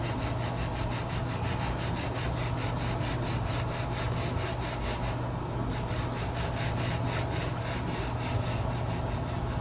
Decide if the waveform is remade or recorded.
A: recorded